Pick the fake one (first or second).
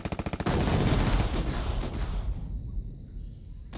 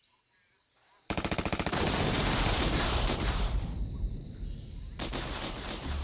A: second